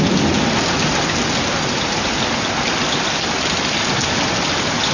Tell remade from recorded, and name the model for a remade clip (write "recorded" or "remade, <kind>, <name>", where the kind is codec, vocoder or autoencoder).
recorded